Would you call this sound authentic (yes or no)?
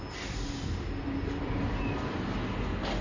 yes